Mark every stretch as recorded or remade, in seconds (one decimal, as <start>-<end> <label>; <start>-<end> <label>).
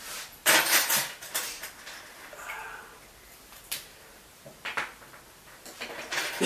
0.0-6.5 recorded